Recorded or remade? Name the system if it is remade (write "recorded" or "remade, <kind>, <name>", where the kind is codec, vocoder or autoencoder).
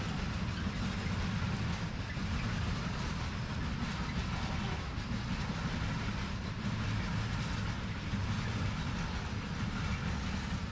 recorded